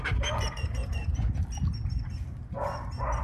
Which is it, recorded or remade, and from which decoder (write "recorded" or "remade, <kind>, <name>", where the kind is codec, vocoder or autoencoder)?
recorded